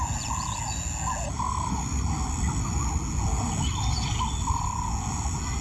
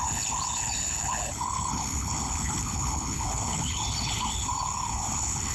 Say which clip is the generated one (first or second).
second